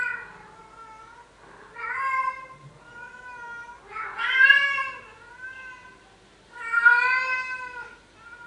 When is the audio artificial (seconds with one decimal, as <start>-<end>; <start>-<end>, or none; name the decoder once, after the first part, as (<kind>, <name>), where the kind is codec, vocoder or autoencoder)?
none